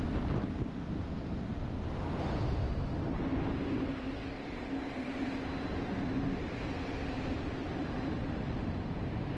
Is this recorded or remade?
recorded